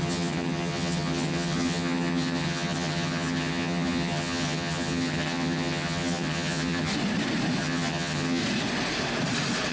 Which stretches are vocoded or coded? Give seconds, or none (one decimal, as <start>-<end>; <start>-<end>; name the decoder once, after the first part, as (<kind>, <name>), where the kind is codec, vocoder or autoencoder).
0.0-6.9 (vocoder, HiFi-GAN); 7.6-8.4